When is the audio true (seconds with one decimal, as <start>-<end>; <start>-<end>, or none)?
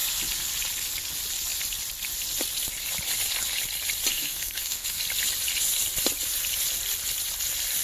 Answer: 0.0-4.1; 5.0-7.8